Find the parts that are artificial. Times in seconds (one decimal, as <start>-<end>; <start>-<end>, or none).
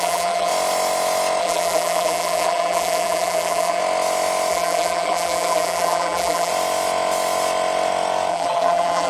0.0-0.5; 1.4-3.8; 4.5-6.5; 8.3-9.1